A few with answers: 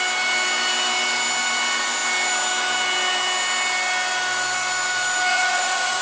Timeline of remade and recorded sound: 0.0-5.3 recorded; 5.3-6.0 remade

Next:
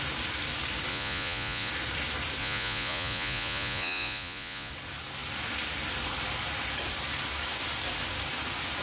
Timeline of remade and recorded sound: 0.0-0.9 recorded; 0.9-1.7 remade; 1.7-2.4 recorded; 2.4-4.7 remade; 4.7-8.8 recorded

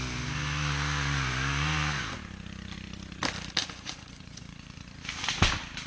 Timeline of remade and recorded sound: 0.0-3.6 recorded; 3.6-5.0 remade; 5.0-5.9 recorded

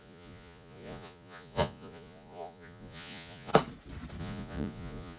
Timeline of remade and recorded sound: 0.0-3.5 remade; 3.5-4.2 recorded; 4.2-5.2 remade

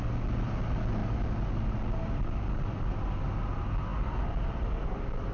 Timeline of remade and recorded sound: 0.0-5.3 recorded

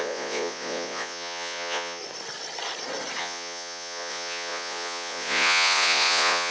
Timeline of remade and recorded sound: 0.0-2.0 remade; 2.0-3.2 recorded; 3.2-6.5 remade

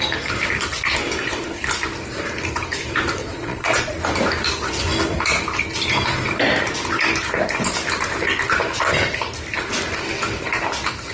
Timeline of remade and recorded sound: 0.0-3.2 recorded; 3.2-4.0 remade; 4.0-11.1 recorded

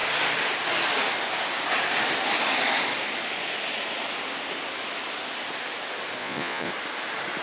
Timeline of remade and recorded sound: 0.0-6.2 recorded; 6.2-6.7 remade; 6.7-7.4 recorded